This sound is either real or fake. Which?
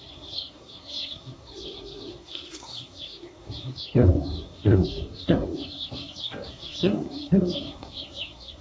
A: fake